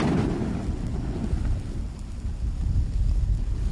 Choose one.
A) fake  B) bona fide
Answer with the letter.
B